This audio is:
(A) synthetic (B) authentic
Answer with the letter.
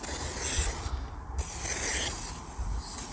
B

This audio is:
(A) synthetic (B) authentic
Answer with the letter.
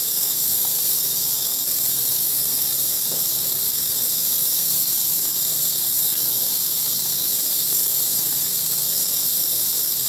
A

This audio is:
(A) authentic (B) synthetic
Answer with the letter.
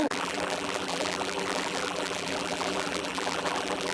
B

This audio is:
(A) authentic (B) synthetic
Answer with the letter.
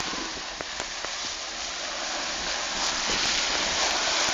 A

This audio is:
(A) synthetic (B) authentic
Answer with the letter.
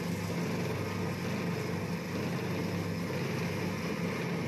B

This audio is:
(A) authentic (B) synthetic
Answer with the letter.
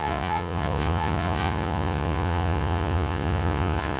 B